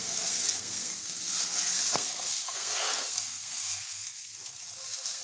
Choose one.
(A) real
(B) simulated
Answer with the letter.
B